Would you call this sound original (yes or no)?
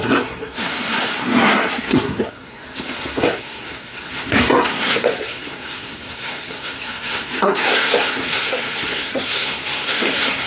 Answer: no